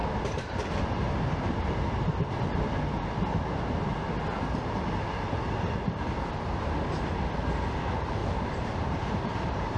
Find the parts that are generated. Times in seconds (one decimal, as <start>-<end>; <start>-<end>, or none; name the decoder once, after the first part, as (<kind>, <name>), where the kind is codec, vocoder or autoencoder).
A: 0.0-1.8 (vocoder, BigVGAN v2); 8.2-9.8